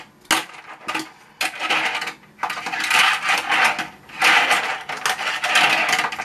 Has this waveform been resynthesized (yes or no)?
no